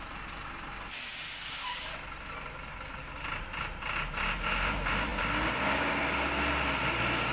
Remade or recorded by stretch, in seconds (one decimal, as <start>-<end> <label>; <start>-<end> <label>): 0.0-7.3 recorded